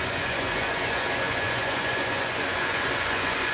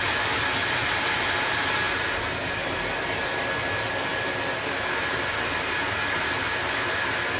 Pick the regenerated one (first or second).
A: first